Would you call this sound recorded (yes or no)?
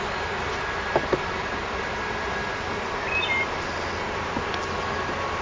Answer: yes